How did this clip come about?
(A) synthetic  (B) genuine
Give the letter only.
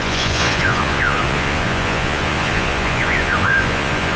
A